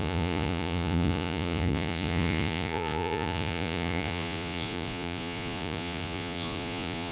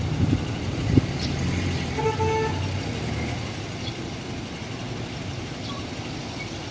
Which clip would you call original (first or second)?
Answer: second